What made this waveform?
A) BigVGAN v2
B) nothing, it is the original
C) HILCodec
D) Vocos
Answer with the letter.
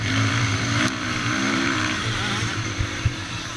A